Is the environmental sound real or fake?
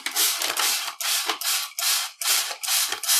real